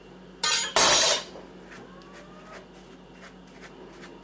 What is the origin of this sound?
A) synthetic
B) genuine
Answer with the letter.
B